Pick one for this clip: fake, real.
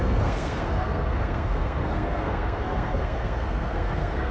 fake